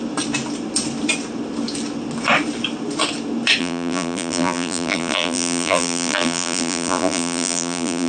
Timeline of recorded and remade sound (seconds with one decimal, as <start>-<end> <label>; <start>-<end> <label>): 0.0-3.6 recorded; 3.6-8.1 remade